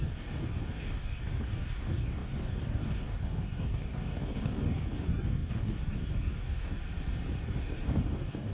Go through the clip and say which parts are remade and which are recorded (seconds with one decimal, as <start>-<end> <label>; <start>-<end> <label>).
0.0-6.8 remade; 6.8-7.4 recorded; 7.4-8.5 remade